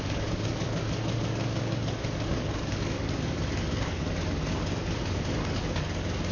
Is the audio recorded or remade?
remade